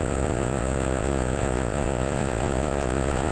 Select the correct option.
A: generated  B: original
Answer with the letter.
A